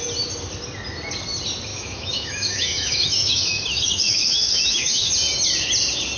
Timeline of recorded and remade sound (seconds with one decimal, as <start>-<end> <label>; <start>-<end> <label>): 0.0-1.7 recorded; 1.7-5.1 remade; 5.1-6.2 recorded